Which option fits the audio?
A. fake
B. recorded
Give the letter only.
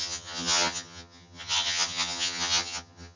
A